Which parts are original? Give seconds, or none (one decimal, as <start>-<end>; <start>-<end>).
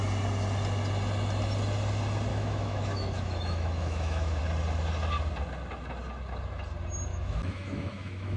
0.0-2.3; 4.4-7.1